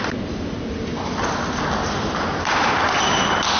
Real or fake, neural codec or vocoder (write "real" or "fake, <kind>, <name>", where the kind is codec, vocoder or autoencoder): real